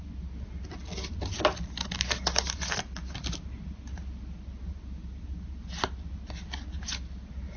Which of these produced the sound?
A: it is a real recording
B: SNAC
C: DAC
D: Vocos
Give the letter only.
A